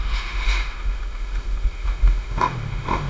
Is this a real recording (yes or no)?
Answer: no